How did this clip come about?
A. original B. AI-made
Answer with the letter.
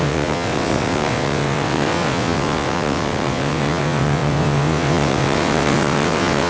B